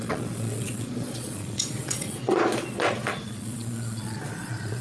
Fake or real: fake